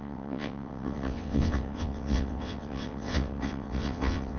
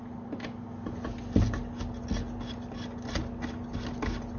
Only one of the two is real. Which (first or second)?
second